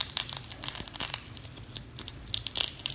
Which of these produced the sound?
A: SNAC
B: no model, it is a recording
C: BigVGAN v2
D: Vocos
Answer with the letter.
C